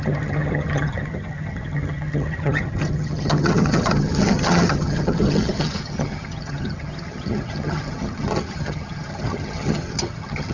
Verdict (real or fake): fake